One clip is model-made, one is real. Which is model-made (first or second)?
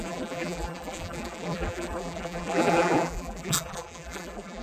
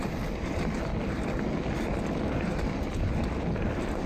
first